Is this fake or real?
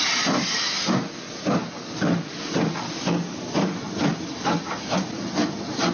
real